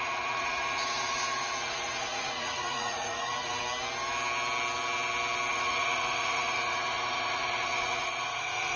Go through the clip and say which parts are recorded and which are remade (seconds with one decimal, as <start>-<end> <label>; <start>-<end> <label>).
0.0-3.6 remade; 3.6-5.5 recorded; 5.5-8.8 remade